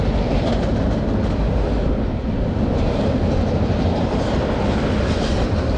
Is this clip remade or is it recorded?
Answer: recorded